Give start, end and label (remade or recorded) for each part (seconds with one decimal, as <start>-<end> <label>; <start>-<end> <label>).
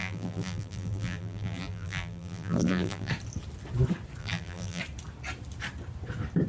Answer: 0.0-3.1 remade; 3.1-4.2 recorded; 4.2-4.8 remade; 4.8-6.5 recorded